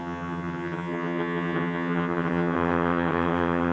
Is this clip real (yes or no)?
no